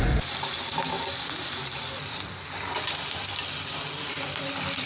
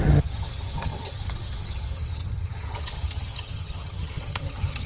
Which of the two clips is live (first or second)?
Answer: first